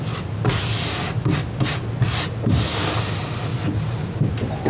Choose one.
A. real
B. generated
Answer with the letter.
A